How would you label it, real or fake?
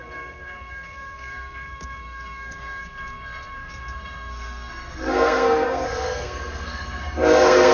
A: fake